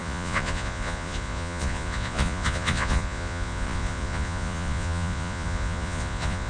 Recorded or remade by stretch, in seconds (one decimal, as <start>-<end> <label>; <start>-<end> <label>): 0.0-6.5 remade